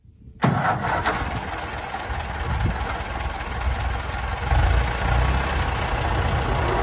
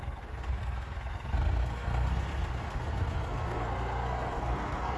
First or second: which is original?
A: first